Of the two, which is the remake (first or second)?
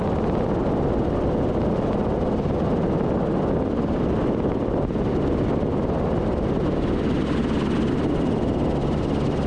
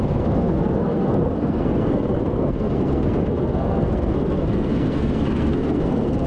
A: second